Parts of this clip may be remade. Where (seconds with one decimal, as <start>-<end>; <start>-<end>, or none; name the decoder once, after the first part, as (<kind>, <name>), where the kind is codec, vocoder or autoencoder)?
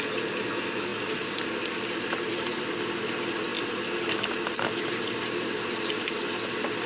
none